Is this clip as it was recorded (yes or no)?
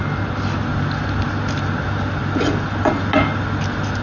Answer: yes